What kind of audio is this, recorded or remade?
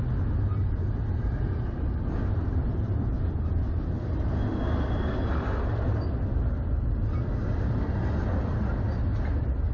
recorded